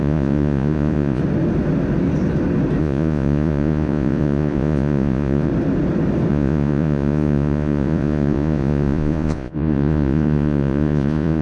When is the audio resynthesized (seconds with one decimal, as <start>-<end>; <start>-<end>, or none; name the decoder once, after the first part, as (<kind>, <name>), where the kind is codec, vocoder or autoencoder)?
0.0-1.2 (vocoder, Vocos); 2.8-5.5; 6.3-11.4